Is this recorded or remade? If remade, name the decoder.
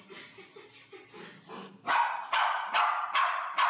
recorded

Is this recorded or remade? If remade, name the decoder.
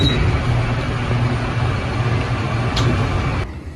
recorded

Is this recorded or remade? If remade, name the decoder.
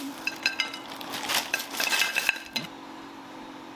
remade, vocoder, BigVGAN v2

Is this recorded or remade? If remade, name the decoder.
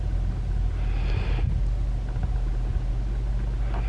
recorded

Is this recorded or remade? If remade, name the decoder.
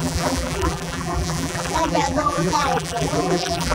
remade, vocoder, BigVGAN v2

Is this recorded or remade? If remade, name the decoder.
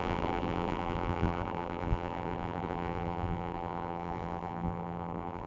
remade, vocoder, BigVGAN v2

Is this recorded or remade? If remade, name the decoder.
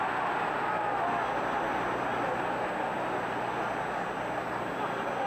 recorded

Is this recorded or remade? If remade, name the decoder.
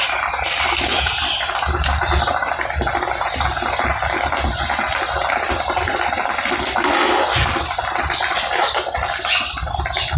recorded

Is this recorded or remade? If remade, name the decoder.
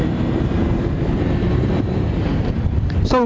remade, vocoder, BigVGAN v2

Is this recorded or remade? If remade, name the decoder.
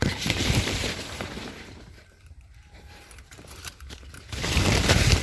remade, vocoder, BigVGAN v2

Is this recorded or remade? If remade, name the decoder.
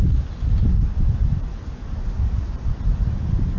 recorded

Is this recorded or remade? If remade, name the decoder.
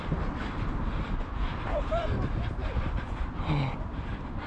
remade, vocoder, BigVGAN v2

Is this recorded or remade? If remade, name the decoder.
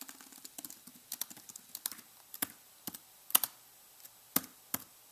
recorded